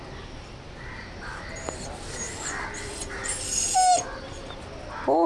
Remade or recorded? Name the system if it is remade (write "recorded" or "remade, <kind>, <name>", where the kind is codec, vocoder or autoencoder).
recorded